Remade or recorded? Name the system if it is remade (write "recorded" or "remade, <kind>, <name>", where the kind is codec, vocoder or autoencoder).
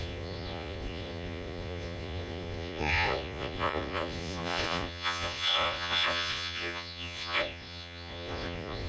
remade, vocoder, Vocos